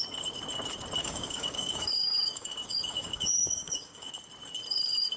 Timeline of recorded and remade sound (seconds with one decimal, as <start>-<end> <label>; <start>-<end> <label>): 0.0-1.0 recorded; 1.0-4.1 remade; 4.1-5.2 recorded